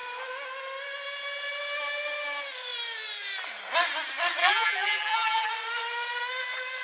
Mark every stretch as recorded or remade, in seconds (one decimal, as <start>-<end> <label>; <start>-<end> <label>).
0.0-4.4 recorded; 4.4-5.5 remade; 5.5-6.8 recorded